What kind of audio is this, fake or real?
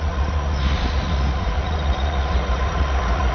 fake